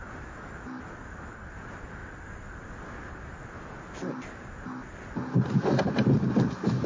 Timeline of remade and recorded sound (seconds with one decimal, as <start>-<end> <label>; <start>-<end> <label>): 0.0-1.5 recorded; 1.5-2.0 remade; 2.0-5.9 recorded; 5.9-6.9 remade